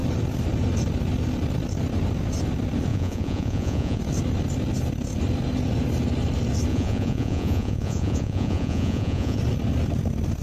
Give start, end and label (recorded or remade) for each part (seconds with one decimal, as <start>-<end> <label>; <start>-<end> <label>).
0.0-2.9 recorded; 2.9-4.0 remade; 4.0-6.7 recorded; 6.7-9.4 remade; 9.4-10.4 recorded